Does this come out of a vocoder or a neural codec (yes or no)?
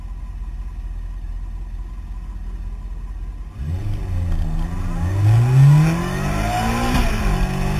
no